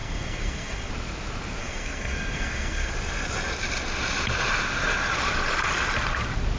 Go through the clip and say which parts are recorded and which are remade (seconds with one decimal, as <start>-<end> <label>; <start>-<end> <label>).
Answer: 0.0-0.9 remade; 0.9-1.6 recorded; 1.6-2.9 remade; 2.9-6.6 recorded